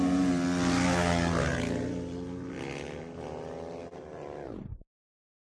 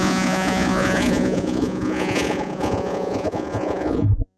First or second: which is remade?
second